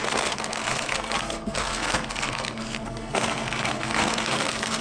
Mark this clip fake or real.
fake